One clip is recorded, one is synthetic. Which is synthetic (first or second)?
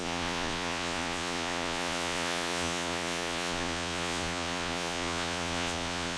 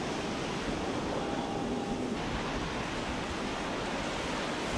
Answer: first